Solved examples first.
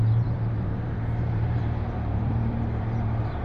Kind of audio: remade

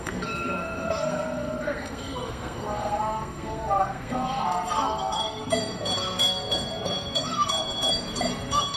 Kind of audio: remade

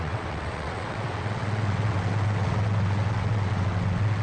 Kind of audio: remade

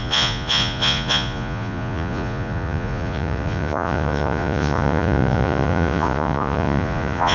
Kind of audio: remade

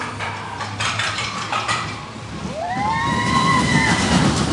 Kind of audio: remade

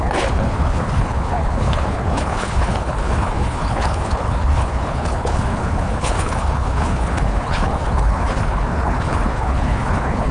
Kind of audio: remade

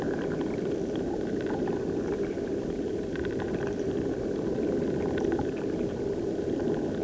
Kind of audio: remade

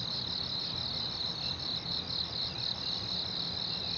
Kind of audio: recorded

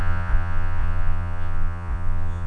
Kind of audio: remade